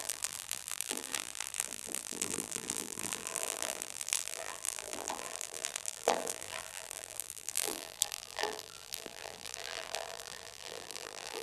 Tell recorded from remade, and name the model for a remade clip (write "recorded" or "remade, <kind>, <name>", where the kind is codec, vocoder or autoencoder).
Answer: remade, vocoder, BigVGAN v2